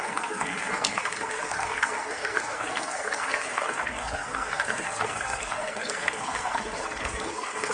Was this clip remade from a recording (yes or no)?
yes